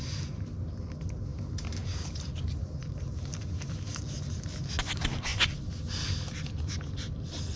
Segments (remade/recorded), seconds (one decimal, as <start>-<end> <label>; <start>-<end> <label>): 0.0-1.3 recorded; 1.3-3.7 remade; 3.7-7.6 recorded